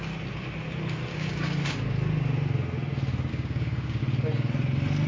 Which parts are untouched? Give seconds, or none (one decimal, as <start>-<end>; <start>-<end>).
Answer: 0.0-1.1; 1.9-3.3; 4.0-5.1